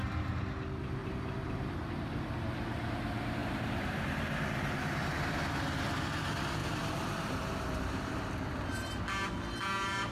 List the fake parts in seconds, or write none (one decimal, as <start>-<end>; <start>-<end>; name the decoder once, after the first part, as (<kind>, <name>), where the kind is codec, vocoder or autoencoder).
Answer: 1.0-1.7 (vocoder, BigVGAN v2); 3.4-5.4; 6.6-8.3